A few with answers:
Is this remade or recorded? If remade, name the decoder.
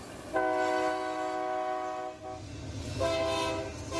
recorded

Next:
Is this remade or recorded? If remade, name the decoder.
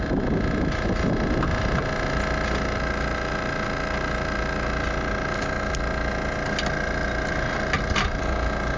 recorded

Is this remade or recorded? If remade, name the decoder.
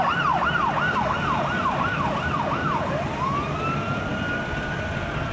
recorded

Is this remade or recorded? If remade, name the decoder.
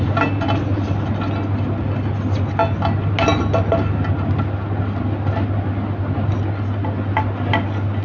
recorded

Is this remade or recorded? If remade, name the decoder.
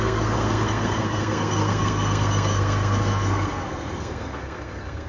remade, codec, SNAC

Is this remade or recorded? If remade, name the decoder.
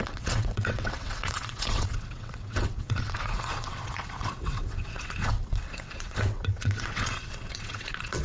remade, vocoder, WaveNeXt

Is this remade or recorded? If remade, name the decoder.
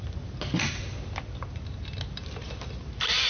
recorded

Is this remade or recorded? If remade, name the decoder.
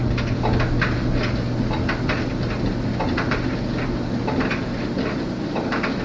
recorded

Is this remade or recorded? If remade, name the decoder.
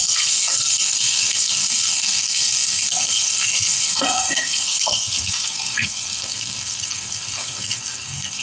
remade, codec, SNAC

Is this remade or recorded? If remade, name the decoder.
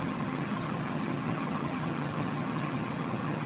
remade, vocoder, HiFi-GAN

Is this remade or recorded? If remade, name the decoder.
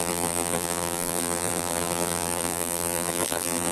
remade, vocoder, BigVGAN v2